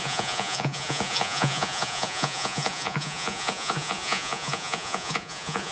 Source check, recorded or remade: remade